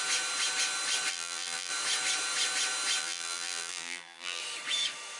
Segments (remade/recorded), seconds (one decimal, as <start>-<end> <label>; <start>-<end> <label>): 0.0-1.1 recorded; 1.1-1.7 remade; 1.7-3.0 recorded; 3.0-4.4 remade; 4.4-5.2 recorded